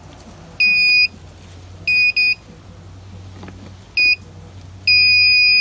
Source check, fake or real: real